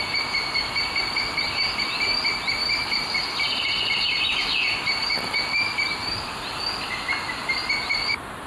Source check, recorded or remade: recorded